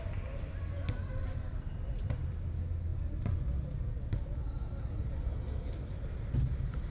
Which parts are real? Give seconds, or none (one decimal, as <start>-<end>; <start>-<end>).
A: 0.0-6.9